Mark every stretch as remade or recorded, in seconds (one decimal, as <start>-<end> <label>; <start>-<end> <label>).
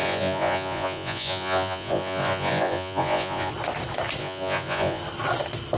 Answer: 0.0-3.5 remade; 3.5-4.2 recorded; 4.2-5.0 remade; 5.0-5.8 recorded